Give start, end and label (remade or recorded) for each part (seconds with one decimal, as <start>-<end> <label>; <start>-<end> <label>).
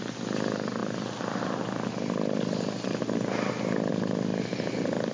0.0-5.1 recorded